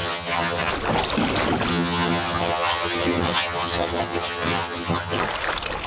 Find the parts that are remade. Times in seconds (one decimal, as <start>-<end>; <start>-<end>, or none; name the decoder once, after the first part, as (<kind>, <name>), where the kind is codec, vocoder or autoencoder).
0.0-0.7 (vocoder, HiFi-GAN); 1.7-5.2